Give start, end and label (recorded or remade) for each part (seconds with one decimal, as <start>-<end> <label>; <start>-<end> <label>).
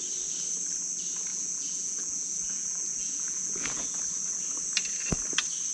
0.0-1.3 recorded; 1.3-4.0 remade; 4.0-5.7 recorded